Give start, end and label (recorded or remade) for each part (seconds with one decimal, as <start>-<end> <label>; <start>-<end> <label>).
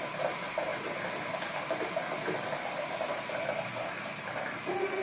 0.0-5.0 recorded